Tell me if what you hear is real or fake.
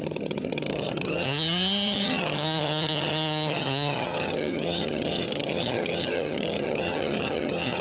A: fake